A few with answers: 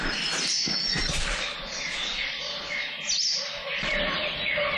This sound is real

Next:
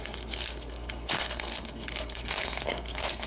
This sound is fake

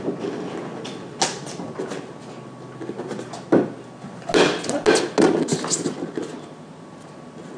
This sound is real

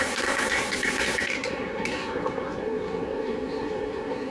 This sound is fake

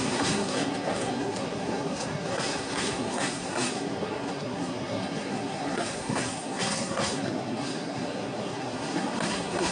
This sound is fake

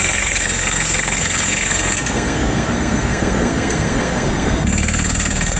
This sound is fake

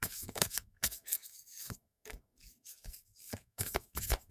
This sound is fake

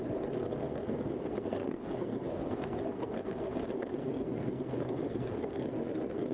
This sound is fake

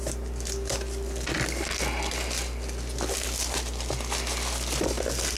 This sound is real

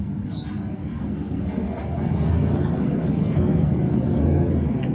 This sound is fake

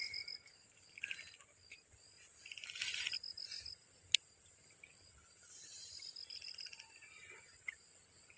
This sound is real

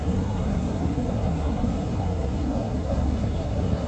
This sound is fake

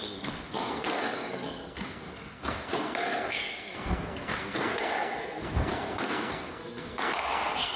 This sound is fake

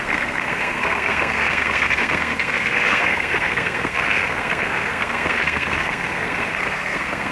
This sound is fake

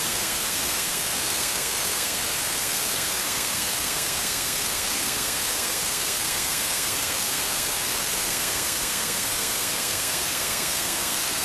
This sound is fake